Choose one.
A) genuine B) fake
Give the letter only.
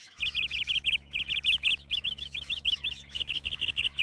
B